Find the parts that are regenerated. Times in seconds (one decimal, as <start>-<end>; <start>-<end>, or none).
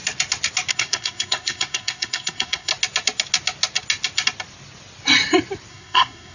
0.7-2.7; 5.7-6.3